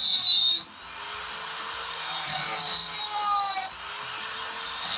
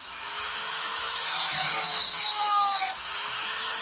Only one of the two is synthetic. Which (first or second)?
second